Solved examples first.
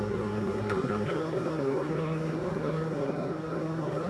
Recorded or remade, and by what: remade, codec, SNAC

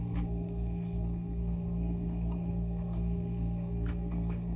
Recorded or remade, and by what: remade, codec, SNAC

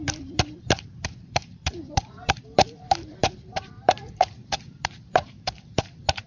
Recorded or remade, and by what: remade, vocoder, BigVGAN v2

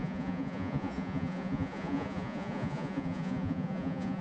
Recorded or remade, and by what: remade, vocoder, Vocos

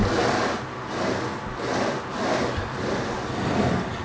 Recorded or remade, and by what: recorded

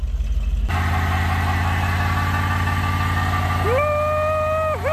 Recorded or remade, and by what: recorded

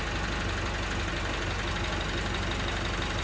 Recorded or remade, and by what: recorded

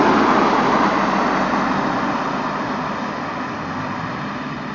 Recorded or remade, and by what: recorded